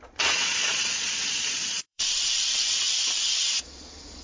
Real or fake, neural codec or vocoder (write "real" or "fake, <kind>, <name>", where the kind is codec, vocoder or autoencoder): fake, vocoder, Vocos